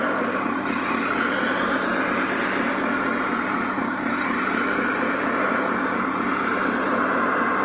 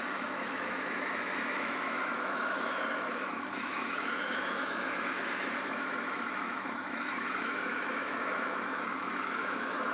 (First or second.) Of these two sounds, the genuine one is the first